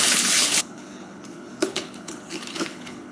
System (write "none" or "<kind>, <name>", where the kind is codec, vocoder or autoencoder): codec, HILCodec